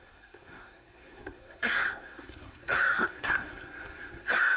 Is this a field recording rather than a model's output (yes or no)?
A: no